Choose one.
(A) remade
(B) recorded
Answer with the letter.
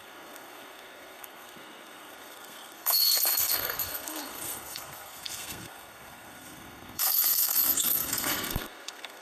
A